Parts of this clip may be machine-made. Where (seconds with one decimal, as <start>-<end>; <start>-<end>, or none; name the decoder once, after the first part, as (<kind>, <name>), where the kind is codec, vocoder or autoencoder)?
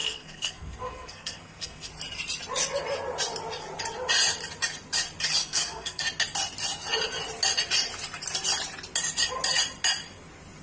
0.0-1.9 (codec, SNAC); 5.4-6.0